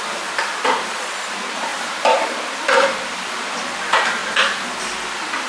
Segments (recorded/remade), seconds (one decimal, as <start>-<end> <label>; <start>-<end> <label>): 0.0-1.7 remade; 1.7-2.5 recorded; 2.5-4.2 remade; 4.2-4.8 recorded; 4.8-5.5 remade